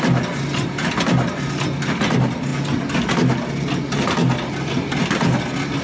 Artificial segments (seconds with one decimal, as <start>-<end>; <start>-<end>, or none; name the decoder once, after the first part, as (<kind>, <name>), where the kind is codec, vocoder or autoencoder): none